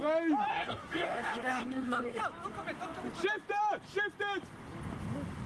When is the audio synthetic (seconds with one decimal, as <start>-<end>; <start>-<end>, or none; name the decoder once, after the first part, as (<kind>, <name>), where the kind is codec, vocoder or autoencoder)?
0.5-2.2 (codec, SNAC)